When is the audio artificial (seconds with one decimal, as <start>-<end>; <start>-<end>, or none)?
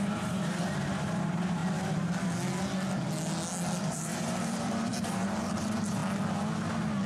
0.0-1.6; 3.9-6.0